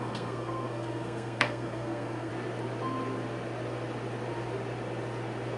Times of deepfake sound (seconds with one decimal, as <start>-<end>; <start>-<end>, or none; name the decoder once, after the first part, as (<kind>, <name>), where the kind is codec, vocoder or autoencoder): 0.0-2.3 (codec, SNAC)